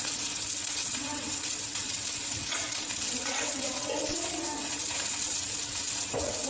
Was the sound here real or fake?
fake